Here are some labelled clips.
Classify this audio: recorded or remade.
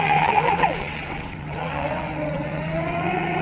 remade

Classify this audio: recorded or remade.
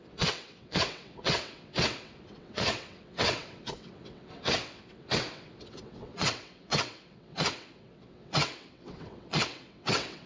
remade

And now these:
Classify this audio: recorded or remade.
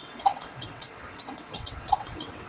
remade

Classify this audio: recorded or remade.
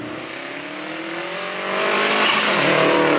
recorded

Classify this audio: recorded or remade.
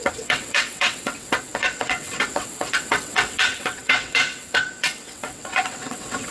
remade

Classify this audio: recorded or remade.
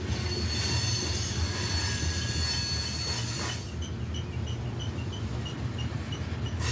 recorded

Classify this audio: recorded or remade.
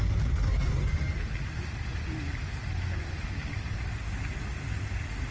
recorded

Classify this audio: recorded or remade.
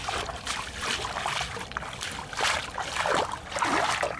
recorded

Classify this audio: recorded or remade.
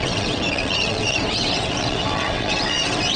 remade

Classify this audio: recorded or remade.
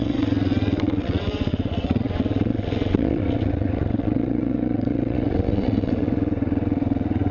remade